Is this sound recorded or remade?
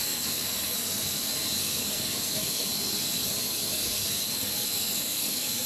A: remade